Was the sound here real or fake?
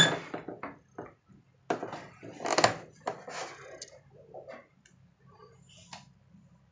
real